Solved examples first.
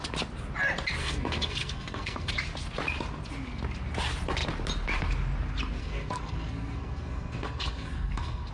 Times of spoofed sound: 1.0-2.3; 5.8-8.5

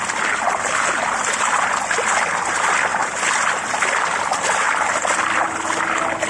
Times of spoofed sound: none

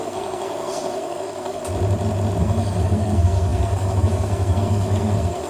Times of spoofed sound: 0.0-1.6; 2.4-5.5

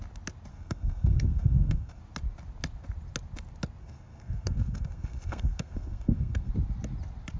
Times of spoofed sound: 0.5-2.0; 3.8-6.5